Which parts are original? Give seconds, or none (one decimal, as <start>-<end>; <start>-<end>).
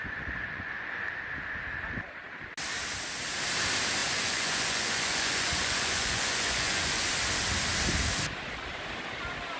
1.0-4.0; 7.1-9.6